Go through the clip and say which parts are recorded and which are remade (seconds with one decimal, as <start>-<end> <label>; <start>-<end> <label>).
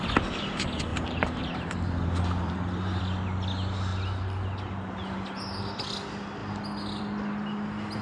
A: 0.0-0.9 recorded; 0.9-3.0 remade; 3.0-8.0 recorded